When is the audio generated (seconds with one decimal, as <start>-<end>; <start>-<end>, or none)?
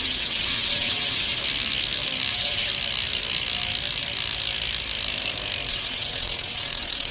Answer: 0.0-1.4; 2.3-2.7; 5.7-7.1